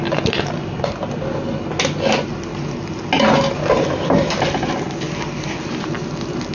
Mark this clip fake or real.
real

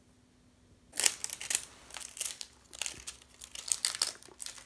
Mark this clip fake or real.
real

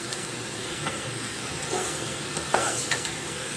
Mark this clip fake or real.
fake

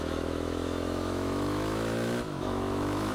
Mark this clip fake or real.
fake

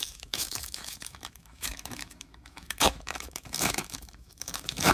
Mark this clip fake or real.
fake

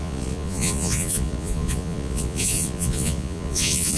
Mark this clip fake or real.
fake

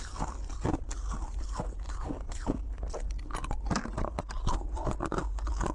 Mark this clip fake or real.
real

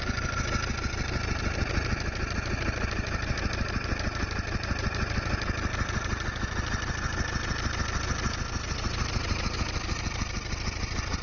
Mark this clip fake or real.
real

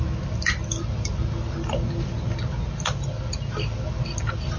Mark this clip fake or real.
real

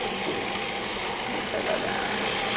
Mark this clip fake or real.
real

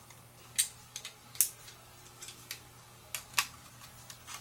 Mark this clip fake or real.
real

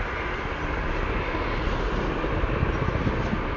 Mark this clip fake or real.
real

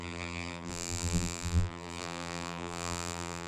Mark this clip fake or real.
fake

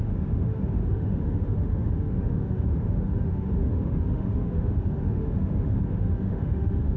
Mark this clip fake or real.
fake